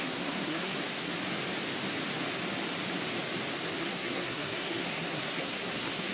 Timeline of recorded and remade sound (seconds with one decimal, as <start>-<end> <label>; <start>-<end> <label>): 0.0-1.1 remade; 1.1-3.8 recorded; 3.8-6.1 remade

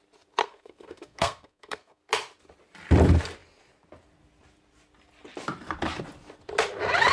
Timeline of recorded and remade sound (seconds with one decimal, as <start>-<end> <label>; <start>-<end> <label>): 0.0-0.4 recorded; 0.4-2.0 remade; 2.0-7.1 recorded

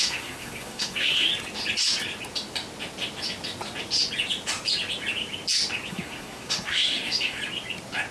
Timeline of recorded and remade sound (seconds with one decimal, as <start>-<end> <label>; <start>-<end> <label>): 0.0-1.3 remade; 1.3-5.9 recorded; 5.9-7.4 remade; 7.4-8.1 recorded

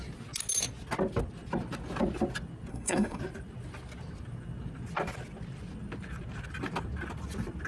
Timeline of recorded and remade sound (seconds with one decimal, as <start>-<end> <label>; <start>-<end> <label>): 0.0-2.7 recorded; 2.7-3.2 remade; 3.2-7.7 recorded

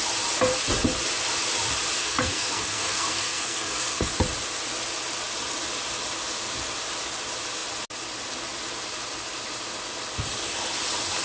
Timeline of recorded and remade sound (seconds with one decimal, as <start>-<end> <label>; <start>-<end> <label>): 0.0-2.0 recorded; 2.0-4.1 remade; 4.1-11.2 recorded